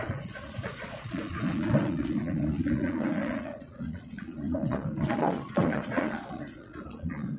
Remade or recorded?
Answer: remade